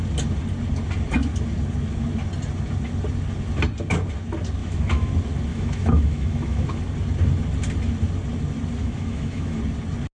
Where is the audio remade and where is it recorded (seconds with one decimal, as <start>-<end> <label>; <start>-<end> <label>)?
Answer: 0.0-4.6 recorded; 4.6-5.1 remade; 5.1-5.5 recorded; 5.5-6.8 remade; 6.8-8.8 recorded; 8.8-9.6 remade; 9.6-10.1 recorded